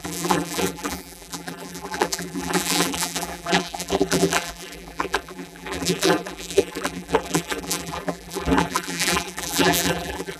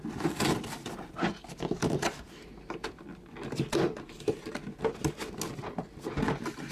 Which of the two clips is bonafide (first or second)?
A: second